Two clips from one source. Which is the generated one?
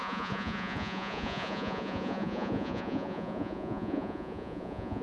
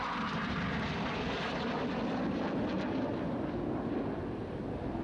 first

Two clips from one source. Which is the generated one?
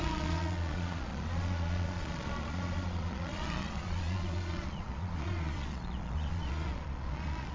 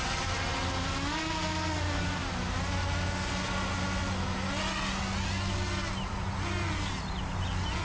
first